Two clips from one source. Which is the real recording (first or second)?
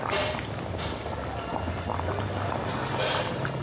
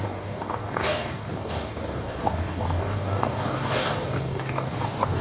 first